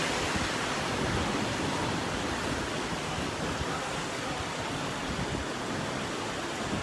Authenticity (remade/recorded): recorded